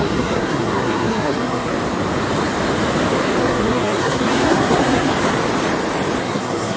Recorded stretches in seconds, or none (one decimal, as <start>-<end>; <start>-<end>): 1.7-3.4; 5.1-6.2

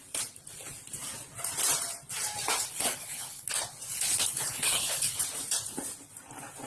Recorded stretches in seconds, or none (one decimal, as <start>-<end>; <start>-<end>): 0.0-2.7; 3.5-3.9; 5.2-6.7

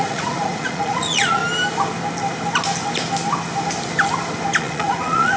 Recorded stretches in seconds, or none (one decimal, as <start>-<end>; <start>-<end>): 1.4-4.6

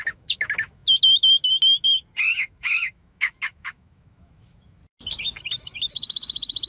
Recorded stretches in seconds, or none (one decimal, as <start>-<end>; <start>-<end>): 4.8-5.4

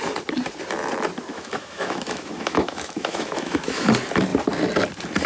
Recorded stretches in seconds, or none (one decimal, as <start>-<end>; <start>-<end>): 0.0-1.3; 3.9-5.3

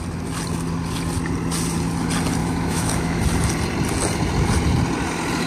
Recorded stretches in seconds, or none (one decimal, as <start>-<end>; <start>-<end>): 0.0-2.4; 3.2-5.5